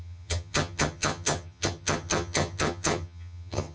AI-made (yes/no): yes